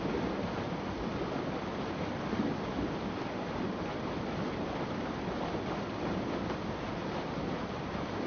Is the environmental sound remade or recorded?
recorded